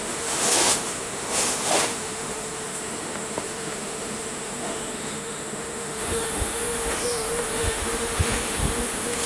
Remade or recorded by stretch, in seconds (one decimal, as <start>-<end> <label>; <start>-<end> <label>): 0.0-9.3 remade